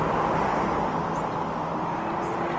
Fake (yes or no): no